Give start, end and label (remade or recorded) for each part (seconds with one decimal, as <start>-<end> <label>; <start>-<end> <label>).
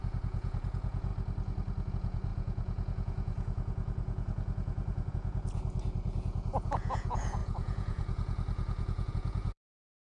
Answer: 0.0-1.1 remade; 1.1-1.9 recorded; 1.9-10.0 remade